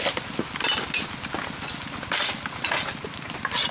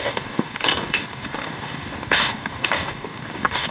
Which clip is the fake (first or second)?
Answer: second